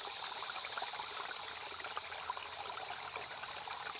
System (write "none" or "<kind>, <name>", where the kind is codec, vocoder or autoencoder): none